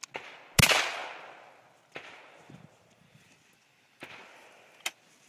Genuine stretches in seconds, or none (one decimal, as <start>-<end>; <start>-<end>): 0.0-5.3